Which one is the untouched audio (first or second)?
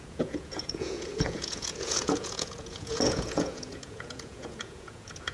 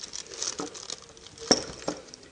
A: second